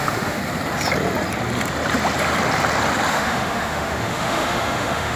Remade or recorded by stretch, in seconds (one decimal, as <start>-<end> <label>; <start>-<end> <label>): 0.0-0.4 remade; 0.4-3.1 recorded; 3.1-5.2 remade